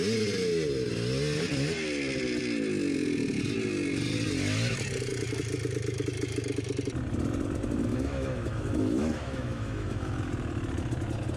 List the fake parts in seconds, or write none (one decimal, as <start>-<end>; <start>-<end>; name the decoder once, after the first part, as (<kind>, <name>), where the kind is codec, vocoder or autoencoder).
7.9-10.3 (autoencoder, DAC-VAE)

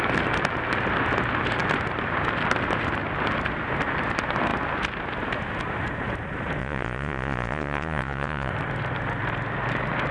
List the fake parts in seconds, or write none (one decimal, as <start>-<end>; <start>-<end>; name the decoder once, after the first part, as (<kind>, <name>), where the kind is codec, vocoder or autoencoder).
6.6-8.5 (vocoder, Vocos)

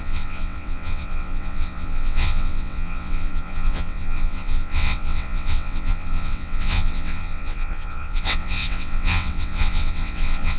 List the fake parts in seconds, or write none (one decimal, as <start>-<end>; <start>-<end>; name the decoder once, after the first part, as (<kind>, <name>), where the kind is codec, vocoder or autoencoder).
0.0-10.6 (vocoder, WaveNeXt)

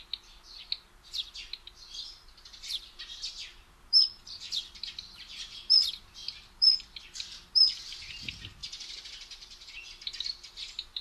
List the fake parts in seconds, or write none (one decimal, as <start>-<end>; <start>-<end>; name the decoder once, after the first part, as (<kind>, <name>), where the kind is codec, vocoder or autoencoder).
8.6-9.7 (vocoder, BigVGAN v2)

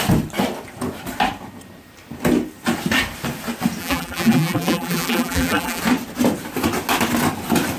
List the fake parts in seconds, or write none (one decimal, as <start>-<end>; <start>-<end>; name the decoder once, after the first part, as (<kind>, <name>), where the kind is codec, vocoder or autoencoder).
3.8-5.8 (vocoder, BigVGAN v2)

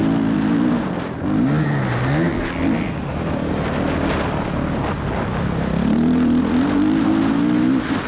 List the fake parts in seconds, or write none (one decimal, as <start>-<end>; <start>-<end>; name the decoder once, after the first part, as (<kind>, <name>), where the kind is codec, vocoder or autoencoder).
none

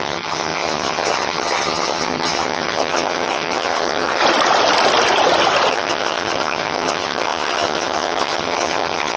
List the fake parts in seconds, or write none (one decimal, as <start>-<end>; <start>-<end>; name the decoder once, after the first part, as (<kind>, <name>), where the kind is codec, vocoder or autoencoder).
0.0-4.2 (vocoder, HiFi-GAN); 5.7-9.2

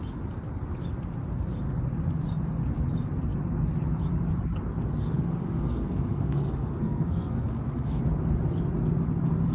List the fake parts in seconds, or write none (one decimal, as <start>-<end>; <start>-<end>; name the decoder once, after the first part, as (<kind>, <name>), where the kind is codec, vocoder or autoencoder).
5.0-8.0 (codec, SNAC)